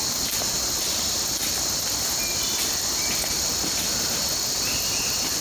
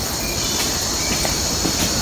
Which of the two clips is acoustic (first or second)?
first